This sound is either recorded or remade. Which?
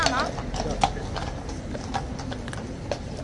recorded